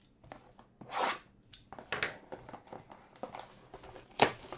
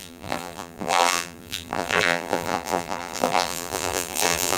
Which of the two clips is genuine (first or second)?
first